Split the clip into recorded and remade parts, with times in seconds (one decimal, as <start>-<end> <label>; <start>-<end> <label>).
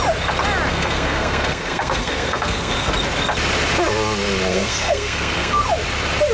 0.0-0.7 recorded; 0.7-2.9 remade; 2.9-4.5 recorded; 4.5-5.6 remade; 5.6-6.3 recorded